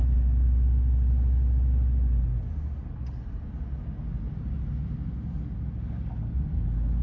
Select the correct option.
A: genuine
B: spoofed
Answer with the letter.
A